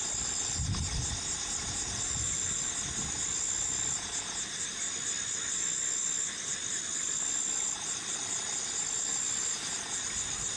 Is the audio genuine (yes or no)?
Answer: yes